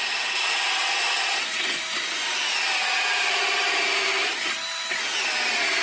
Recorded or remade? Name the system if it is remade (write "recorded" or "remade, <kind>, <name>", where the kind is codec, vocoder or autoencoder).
recorded